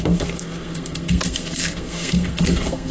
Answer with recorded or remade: remade